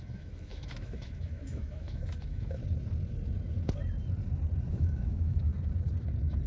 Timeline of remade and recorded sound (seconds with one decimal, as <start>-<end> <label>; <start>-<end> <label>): 0.0-2.6 remade; 2.6-4.7 recorded; 4.7-5.5 remade; 5.5-6.5 recorded